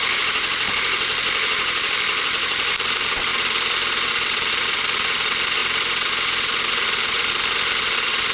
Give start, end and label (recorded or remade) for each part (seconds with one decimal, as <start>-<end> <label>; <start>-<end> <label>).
0.0-3.3 remade; 3.3-4.1 recorded; 4.1-5.6 remade; 5.6-6.7 recorded; 6.7-8.3 remade